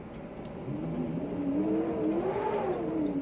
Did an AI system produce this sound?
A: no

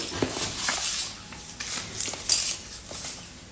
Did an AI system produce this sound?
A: no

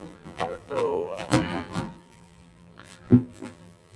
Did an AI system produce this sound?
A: yes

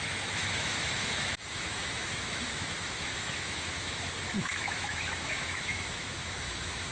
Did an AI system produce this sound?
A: yes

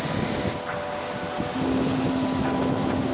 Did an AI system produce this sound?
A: no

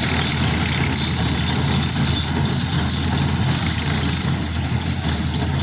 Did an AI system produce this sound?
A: no